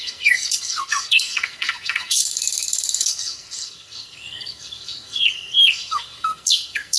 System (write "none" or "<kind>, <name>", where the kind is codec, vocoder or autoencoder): codec, SNAC